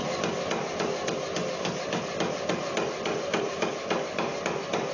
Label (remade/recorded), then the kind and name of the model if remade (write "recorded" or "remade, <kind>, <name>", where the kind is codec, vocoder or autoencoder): recorded